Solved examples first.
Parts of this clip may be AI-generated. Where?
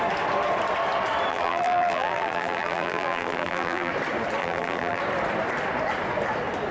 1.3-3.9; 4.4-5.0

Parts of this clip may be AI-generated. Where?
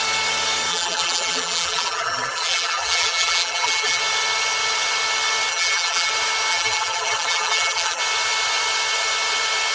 0.7-4.0; 5.5-6.1; 6.5-8.0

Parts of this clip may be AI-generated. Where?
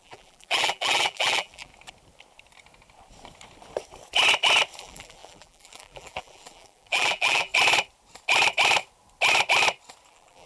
0.0-1.7; 4.8-7.5; 10.1-10.5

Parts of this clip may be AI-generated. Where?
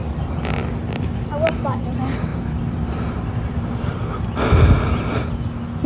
0.0-0.5; 2.3-5.1